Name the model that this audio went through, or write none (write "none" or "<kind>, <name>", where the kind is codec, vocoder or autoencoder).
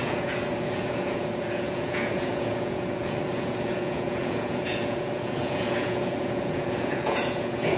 vocoder, Vocos